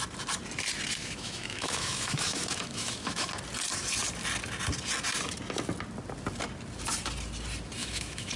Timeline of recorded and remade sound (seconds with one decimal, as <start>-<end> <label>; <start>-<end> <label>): 0.0-1.0 recorded; 1.0-3.3 remade; 3.3-7.8 recorded; 7.8-8.4 remade